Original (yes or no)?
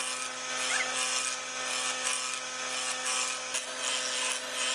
yes